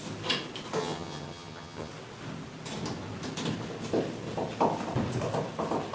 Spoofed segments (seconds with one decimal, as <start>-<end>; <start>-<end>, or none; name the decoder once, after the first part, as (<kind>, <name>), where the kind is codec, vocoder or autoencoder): 0.8-1.9 (vocoder, HiFi-GAN)